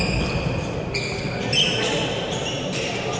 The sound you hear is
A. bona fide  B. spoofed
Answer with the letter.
A